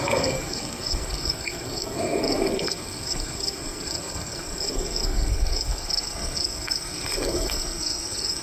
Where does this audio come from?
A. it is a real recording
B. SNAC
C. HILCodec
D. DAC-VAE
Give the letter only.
B